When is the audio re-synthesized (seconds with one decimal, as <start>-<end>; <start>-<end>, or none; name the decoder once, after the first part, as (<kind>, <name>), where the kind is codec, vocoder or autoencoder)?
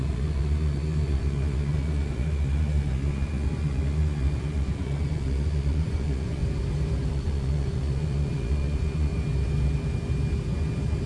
0.0-6.4 (vocoder, Vocos); 7.1-9.1